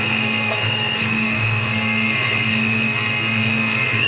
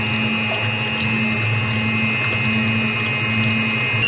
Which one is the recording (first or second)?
second